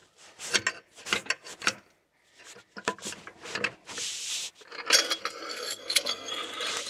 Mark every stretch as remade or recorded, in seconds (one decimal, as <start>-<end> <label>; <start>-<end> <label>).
0.0-5.5 recorded; 5.5-6.3 remade; 6.3-6.9 recorded